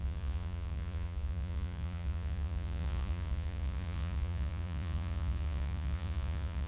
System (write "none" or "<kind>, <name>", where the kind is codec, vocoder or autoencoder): vocoder, Vocos